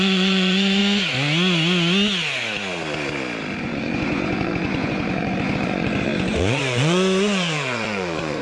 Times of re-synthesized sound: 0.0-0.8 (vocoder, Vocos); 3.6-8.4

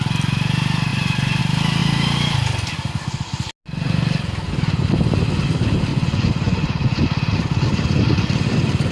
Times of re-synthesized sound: 0.9-1.4 (vocoder, Vocos); 5.9-7.0

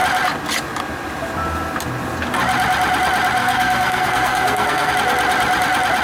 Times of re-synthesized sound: 3.4-4.9 (codec, SNAC)

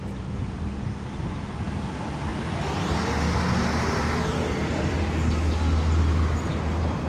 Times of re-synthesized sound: none

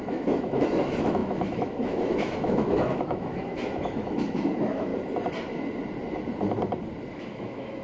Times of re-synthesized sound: 0.0-4.9 (autoencoder, DAC-VAE); 7.1-7.8